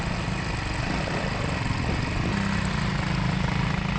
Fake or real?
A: real